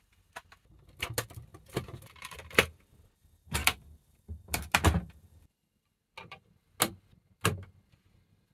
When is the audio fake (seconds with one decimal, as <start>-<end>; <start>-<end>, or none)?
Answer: 1.5-2.9; 3.6-4.7